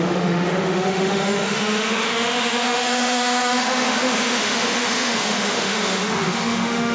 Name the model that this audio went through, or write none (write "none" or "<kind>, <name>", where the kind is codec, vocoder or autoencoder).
autoencoder, DAC-VAE